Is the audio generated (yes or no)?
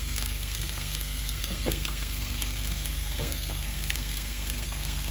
yes